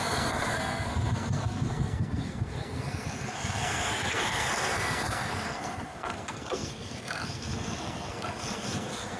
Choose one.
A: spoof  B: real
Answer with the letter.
A